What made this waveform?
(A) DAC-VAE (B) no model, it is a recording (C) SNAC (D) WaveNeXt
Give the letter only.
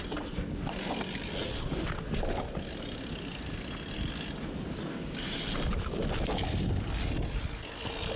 B